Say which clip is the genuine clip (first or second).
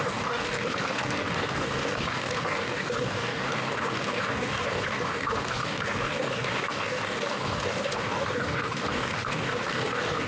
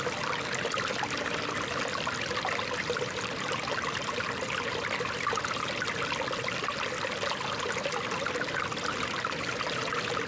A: second